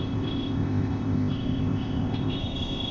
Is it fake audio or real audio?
fake